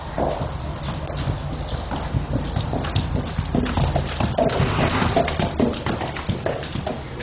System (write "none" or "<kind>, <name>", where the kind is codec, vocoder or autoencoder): none